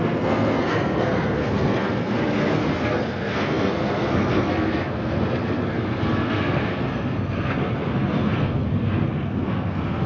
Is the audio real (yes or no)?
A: no